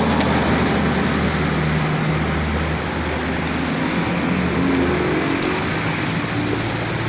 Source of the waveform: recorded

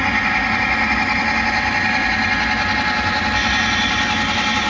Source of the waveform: recorded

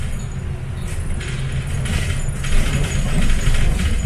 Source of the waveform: recorded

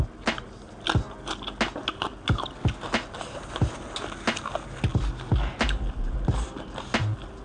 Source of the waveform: recorded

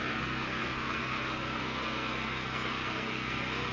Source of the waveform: remade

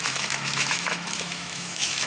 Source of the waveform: remade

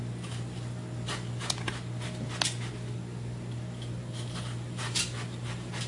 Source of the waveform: recorded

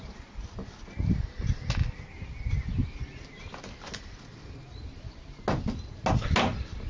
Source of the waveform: recorded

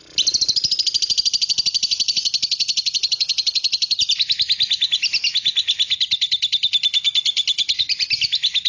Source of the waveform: recorded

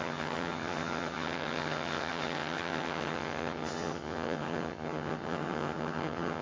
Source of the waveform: remade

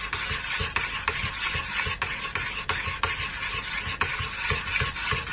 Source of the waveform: recorded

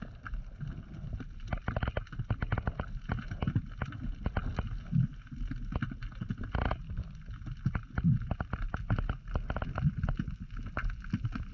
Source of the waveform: recorded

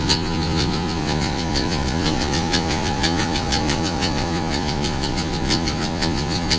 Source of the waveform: remade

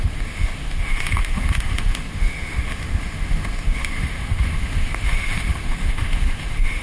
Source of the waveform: remade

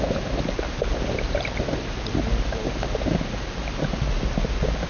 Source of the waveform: recorded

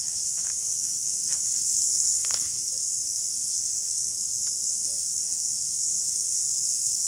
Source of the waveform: remade